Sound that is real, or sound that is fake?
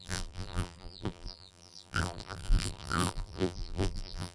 fake